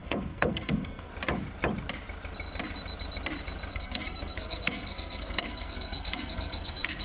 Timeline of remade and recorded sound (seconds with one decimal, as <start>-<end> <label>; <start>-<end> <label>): 0.0-1.1 remade; 1.1-3.7 recorded; 3.7-7.0 remade